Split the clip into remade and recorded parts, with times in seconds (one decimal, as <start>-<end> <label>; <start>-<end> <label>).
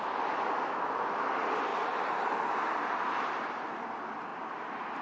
0.0-5.0 recorded